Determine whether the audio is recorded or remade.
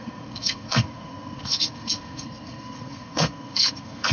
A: remade